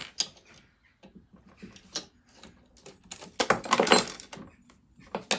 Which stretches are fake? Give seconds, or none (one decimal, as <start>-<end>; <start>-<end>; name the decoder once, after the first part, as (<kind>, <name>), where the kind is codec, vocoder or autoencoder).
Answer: none